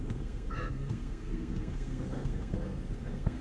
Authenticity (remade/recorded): remade